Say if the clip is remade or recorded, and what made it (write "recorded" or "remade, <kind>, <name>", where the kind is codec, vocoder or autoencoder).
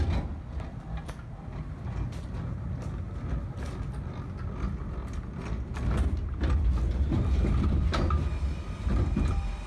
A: recorded